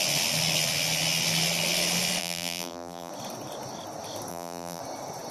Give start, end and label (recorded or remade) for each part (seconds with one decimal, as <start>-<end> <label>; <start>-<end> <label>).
0.0-2.2 recorded; 2.2-3.1 remade; 3.1-4.3 recorded; 4.3-4.8 remade; 4.8-5.3 recorded